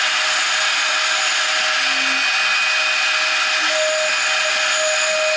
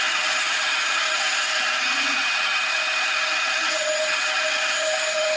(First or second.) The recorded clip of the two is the first